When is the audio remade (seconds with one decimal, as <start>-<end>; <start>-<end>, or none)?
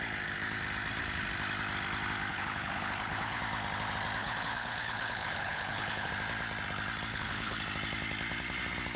2.3-3.4; 4.2-6.1; 7.1-7.6